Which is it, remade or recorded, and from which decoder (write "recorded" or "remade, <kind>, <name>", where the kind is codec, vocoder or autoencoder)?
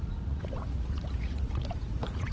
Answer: remade, vocoder, Vocos